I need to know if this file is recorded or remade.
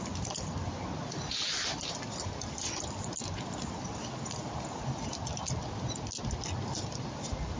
recorded